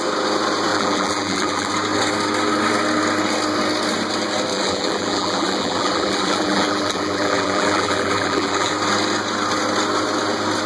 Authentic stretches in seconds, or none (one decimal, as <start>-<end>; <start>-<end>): 0.0-0.7; 1.7-4.5; 8.7-10.7